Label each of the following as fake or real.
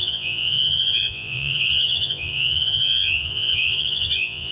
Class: fake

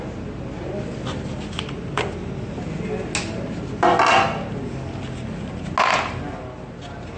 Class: real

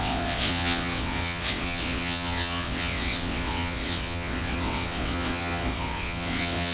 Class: fake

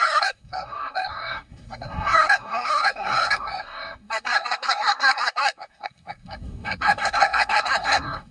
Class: fake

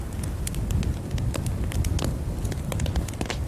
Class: real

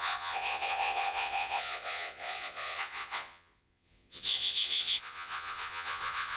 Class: fake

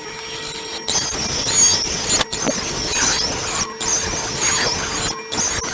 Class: real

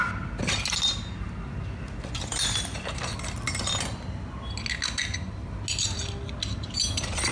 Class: real